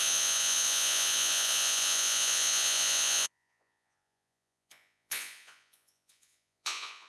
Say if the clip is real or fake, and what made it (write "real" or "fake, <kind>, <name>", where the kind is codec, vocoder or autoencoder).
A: fake, vocoder, Vocos